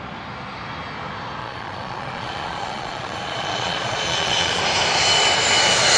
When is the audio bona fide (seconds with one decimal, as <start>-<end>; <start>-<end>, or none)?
0.0-1.4; 4.6-6.0